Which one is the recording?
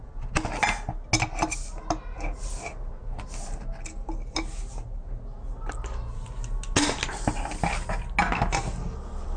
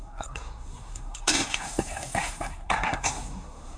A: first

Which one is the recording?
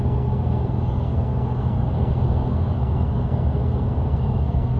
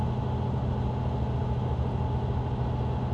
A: second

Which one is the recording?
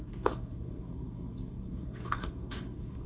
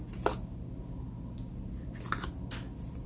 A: second